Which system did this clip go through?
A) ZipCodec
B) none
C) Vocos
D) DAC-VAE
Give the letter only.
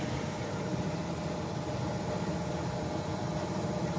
B